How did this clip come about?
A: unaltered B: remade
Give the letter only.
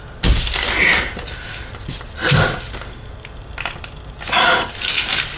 A